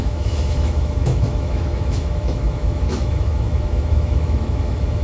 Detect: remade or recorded remade